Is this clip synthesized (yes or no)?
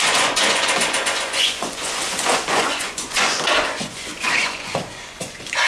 yes